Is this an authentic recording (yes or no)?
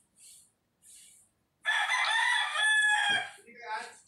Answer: yes